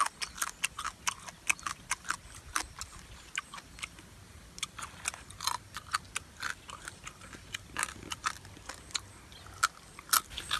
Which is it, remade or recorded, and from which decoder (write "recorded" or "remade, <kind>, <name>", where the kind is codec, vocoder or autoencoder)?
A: recorded